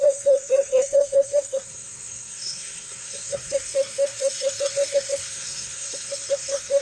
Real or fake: fake